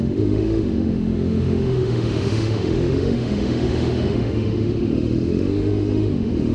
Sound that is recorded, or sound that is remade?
remade